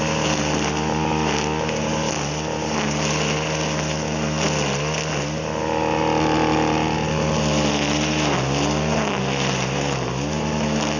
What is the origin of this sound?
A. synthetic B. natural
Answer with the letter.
B